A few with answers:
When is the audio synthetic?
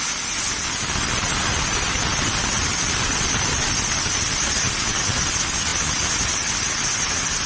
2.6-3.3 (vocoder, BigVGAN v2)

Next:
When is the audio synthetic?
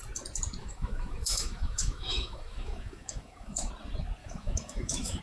0.6-3.7 (autoencoder, DAC-VAE); 4.2-5.2